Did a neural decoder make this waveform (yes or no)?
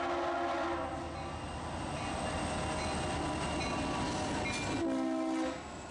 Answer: no